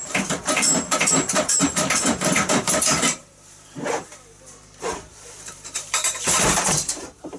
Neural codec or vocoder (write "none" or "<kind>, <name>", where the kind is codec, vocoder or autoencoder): vocoder, BigVGAN v2